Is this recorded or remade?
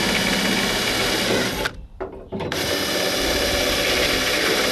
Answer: recorded